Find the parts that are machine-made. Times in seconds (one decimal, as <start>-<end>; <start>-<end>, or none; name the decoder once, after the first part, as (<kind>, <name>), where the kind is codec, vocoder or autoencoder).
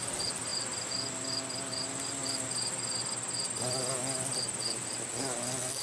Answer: none